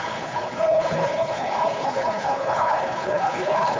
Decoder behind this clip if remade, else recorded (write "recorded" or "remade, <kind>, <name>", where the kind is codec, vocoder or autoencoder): remade, codec, HILCodec